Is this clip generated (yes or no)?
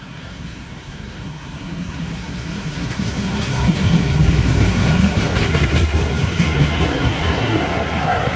yes